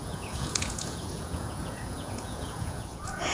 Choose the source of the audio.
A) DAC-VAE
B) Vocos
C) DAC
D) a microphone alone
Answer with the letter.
B